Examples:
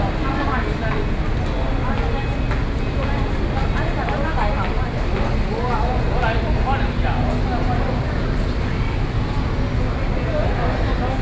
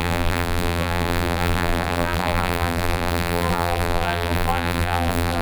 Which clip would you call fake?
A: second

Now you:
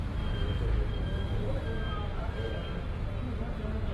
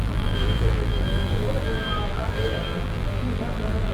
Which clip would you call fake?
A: second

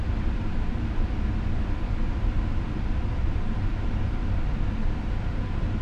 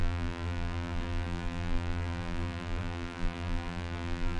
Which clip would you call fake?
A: second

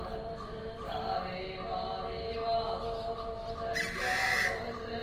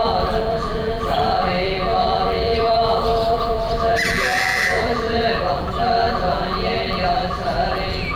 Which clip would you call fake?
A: second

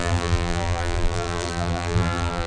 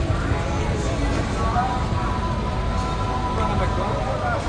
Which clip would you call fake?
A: first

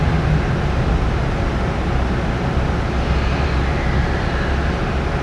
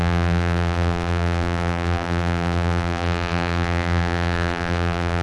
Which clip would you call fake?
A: second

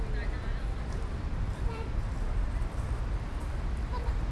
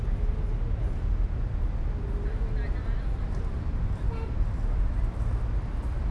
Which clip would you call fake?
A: first